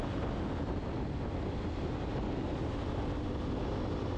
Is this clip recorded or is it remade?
recorded